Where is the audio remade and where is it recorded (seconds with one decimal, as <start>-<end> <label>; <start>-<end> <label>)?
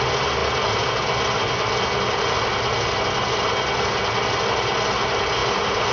0.0-5.4 recorded; 5.4-5.9 remade